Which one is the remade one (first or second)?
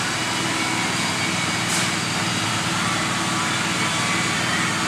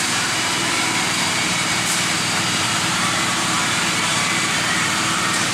second